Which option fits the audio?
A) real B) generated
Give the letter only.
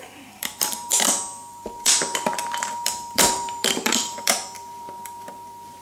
B